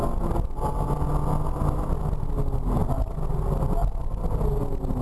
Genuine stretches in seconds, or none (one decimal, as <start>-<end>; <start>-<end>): 0.0-5.0